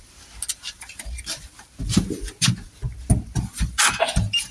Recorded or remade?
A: recorded